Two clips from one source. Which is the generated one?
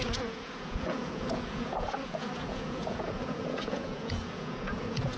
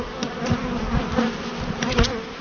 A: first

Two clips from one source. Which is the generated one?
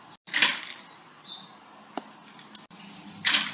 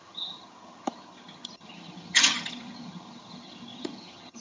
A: second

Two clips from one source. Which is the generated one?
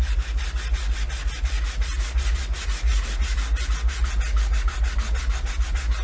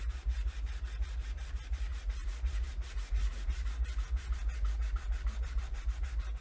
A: second